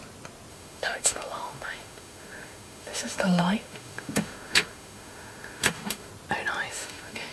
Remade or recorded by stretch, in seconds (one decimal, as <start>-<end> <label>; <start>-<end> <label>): 0.0-0.5 recorded; 0.5-6.1 remade; 6.1-6.7 recorded; 6.7-7.3 remade